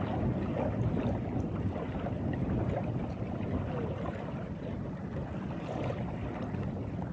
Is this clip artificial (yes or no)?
no